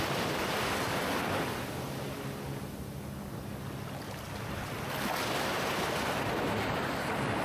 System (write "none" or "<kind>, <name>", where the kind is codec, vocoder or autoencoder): none